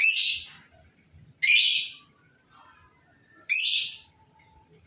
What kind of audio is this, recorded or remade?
recorded